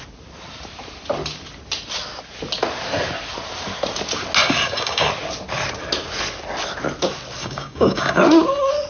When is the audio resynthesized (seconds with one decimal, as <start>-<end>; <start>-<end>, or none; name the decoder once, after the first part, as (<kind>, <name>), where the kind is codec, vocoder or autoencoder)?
4.4-5.1 (codec, DAC); 7.4-8.2